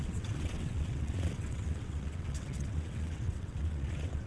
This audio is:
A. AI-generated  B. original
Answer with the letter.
A